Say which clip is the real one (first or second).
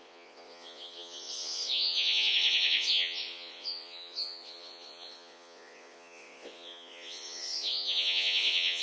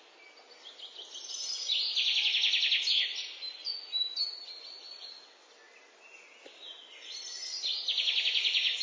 second